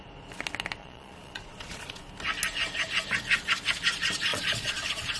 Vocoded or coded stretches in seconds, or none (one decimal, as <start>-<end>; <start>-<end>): 0.8-2.0; 4.3-5.2